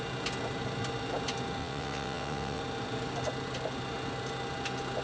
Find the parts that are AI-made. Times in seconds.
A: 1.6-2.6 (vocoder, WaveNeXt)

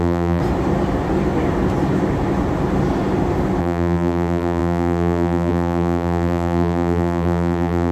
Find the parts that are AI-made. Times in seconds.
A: 0.0-0.4 (vocoder, BigVGAN v2); 3.6-7.9